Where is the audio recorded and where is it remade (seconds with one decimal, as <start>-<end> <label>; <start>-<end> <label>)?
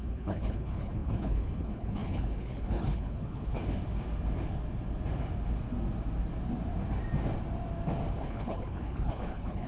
0.0-3.6 remade; 3.6-8.2 recorded; 8.2-9.7 remade